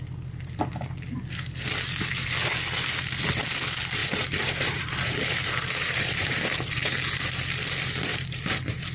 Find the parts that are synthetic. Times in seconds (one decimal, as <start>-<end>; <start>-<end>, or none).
4.0-6.8; 8.1-8.9